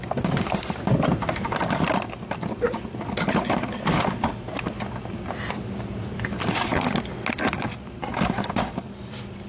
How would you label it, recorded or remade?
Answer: remade